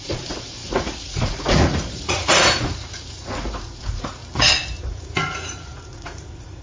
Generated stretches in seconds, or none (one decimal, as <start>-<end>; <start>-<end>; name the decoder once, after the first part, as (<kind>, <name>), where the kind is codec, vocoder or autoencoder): 0.0-4.2 (vocoder, Vocos); 4.8-6.6